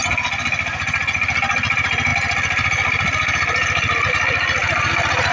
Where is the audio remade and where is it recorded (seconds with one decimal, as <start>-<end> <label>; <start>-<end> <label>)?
0.0-5.3 recorded